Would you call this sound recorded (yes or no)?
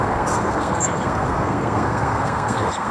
no